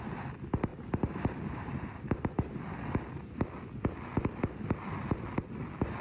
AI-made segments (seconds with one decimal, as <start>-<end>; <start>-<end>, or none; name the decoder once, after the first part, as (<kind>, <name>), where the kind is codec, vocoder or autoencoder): 0.7-2.6 (vocoder, BigVGAN v2)